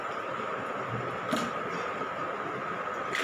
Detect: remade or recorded recorded